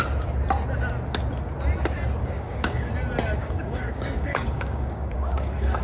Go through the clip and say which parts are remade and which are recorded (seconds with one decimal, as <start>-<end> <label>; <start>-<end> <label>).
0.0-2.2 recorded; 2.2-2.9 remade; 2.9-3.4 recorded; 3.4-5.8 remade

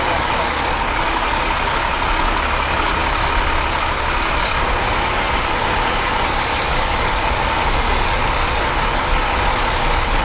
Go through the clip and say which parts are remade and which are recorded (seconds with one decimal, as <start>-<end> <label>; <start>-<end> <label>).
0.0-3.0 remade; 3.0-3.8 recorded; 3.8-10.2 remade

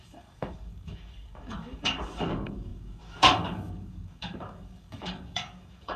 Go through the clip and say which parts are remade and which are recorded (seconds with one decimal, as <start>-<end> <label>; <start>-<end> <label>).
0.0-6.0 remade

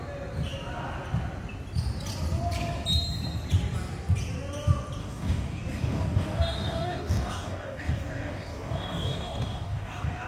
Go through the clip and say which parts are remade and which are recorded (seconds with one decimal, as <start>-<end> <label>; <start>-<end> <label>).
0.0-5.0 recorded; 5.0-10.3 remade